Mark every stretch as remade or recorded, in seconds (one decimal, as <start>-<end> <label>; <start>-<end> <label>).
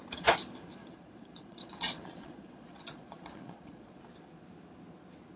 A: 0.0-0.8 recorded; 0.8-4.0 remade; 4.0-5.4 recorded